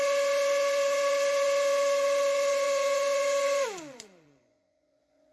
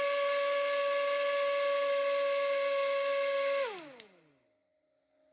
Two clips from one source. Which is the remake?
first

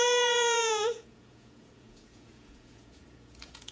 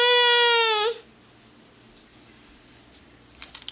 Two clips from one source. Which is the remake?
first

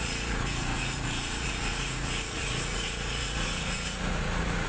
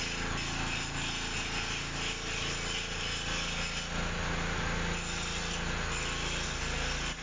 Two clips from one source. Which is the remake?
first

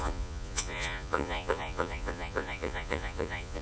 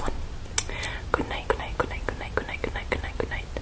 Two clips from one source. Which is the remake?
first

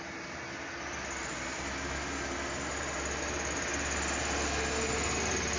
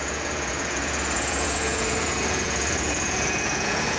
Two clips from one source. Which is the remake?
second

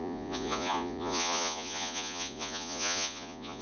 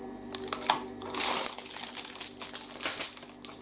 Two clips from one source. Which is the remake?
first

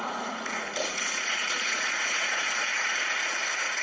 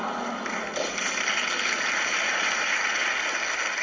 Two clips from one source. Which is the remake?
first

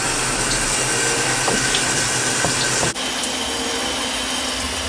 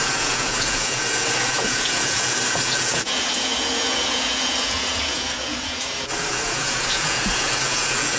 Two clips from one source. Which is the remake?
second